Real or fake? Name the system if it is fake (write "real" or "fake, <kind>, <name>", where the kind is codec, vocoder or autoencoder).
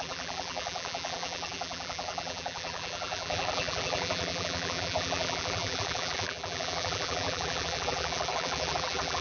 fake, vocoder, BigVGAN v2